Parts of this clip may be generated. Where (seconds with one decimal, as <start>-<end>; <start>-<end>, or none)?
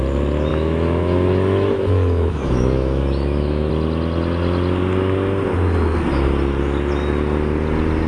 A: 0.5-3.7